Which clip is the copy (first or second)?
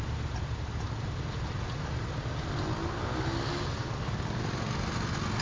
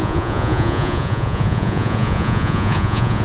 second